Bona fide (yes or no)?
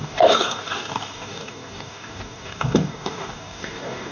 no